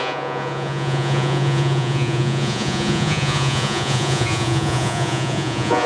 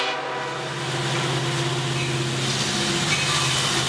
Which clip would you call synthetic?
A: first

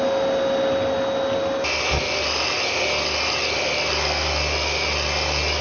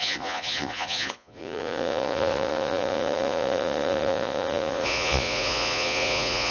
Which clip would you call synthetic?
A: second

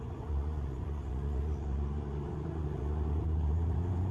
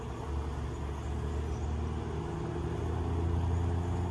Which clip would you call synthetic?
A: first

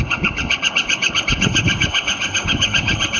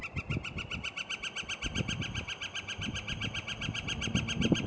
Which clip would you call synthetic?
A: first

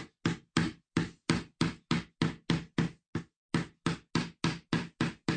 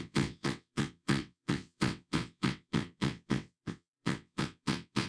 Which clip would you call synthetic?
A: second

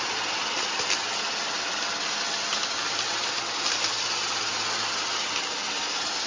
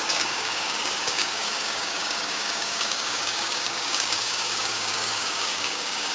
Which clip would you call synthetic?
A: second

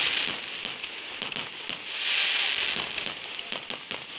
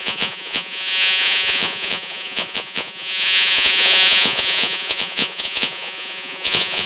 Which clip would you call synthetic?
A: second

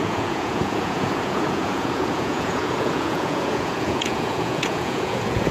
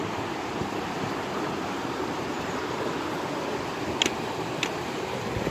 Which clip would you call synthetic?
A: first